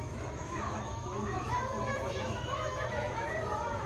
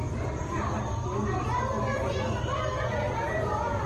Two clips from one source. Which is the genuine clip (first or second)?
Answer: second